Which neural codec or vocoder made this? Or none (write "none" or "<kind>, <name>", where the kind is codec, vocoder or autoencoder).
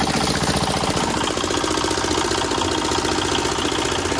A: none